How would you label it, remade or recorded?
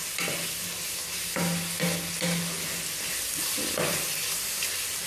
recorded